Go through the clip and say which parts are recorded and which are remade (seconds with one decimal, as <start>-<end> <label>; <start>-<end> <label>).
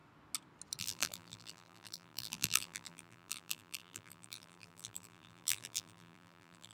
0.0-0.8 recorded; 0.8-6.7 remade